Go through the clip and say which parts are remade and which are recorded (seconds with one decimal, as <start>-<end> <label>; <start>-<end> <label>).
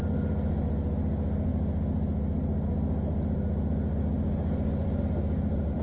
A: 0.0-5.8 recorded